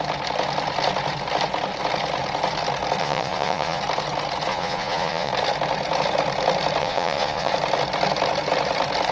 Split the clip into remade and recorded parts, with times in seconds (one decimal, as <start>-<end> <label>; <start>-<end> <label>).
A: 0.0-3.0 recorded; 3.0-3.8 remade; 3.8-4.5 recorded; 4.5-5.3 remade; 5.3-6.8 recorded; 6.8-7.5 remade; 7.5-9.1 recorded